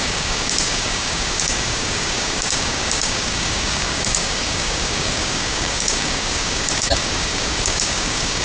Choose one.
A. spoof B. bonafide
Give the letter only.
A